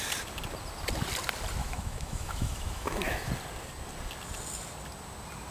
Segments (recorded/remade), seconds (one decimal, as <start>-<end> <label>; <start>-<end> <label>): 0.0-1.6 recorded; 1.6-3.3 remade; 3.3-5.5 recorded